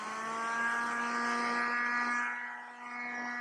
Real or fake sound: real